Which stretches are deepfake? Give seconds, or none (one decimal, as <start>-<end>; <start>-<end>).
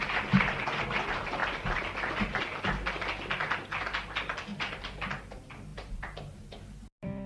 4.5-5.1